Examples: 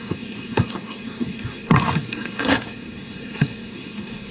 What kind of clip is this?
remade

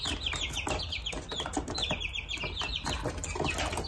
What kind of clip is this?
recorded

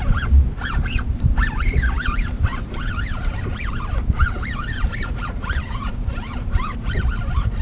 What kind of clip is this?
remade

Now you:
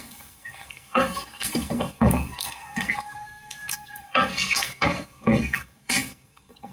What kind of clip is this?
remade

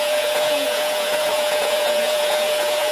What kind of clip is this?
remade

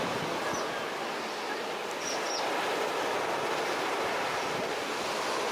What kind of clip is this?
recorded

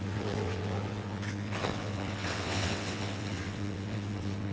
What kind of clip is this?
remade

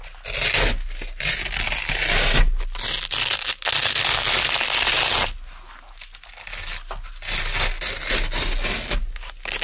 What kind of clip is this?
recorded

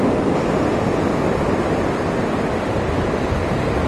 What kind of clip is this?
recorded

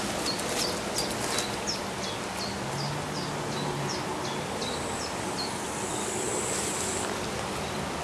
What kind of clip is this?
recorded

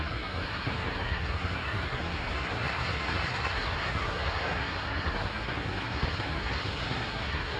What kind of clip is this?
remade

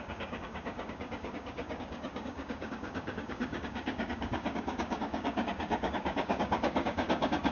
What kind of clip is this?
remade